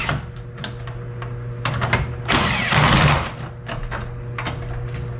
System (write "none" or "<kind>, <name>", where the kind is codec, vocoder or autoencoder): none